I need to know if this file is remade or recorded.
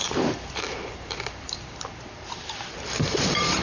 remade